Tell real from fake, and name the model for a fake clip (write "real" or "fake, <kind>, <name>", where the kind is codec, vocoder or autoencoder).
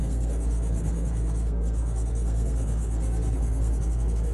fake, codec, SNAC